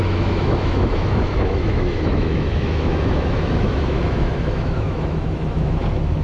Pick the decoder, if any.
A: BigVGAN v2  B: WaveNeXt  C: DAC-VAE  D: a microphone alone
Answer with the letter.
C